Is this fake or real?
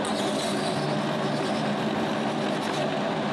real